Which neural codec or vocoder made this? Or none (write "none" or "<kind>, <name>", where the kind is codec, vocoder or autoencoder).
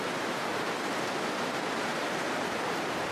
none